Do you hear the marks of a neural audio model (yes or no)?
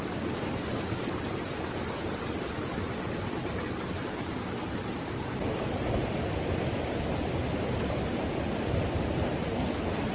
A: no